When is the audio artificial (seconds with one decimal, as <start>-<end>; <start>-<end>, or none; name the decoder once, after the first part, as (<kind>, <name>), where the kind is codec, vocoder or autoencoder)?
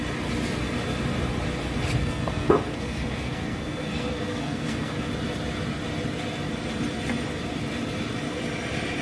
2.0-5.1 (codec, SNAC)